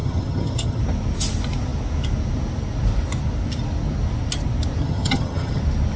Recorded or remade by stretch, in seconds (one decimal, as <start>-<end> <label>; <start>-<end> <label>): 0.0-0.8 remade; 0.8-4.8 recorded; 4.8-5.6 remade; 5.6-6.0 recorded